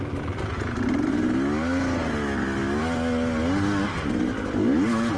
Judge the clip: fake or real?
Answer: real